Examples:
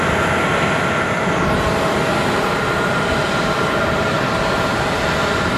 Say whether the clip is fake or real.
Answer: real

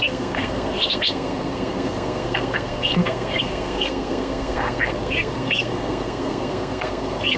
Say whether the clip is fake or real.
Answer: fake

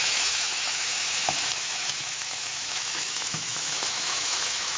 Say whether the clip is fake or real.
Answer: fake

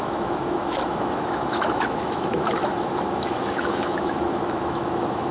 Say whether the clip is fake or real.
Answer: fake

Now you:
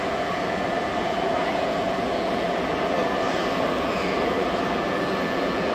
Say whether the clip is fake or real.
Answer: fake